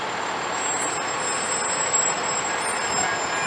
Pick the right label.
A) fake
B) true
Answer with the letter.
B